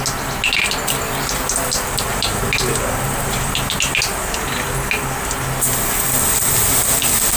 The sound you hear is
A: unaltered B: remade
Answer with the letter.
A